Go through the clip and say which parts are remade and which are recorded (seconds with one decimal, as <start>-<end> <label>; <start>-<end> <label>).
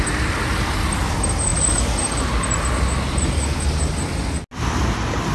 0.0-5.3 recorded